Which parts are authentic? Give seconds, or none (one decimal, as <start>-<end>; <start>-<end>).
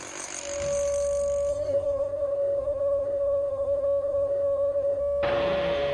0.0-1.5; 5.0-5.9